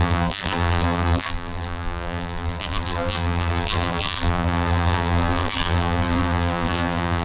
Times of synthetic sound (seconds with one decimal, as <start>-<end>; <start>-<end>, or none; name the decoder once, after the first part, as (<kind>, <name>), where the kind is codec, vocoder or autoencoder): 0.0-7.2 (vocoder, BigVGAN v2)